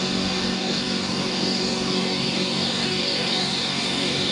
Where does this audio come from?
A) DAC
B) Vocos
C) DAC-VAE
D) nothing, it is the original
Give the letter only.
A